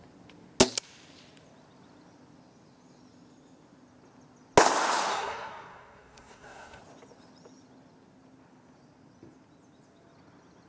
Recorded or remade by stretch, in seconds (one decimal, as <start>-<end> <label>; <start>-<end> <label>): 0.0-5.1 recorded; 5.1-6.8 remade; 6.8-10.7 recorded